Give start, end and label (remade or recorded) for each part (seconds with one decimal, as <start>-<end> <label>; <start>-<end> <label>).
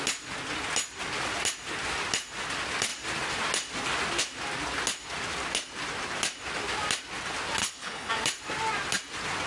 0.0-7.6 recorded; 7.6-8.1 remade; 8.1-9.5 recorded